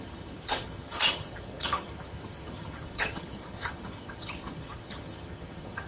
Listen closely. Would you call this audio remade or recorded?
remade